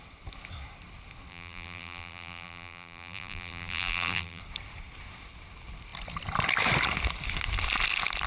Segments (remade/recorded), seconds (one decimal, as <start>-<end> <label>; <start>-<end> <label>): 0.0-1.3 recorded; 1.3-4.4 remade; 4.4-8.3 recorded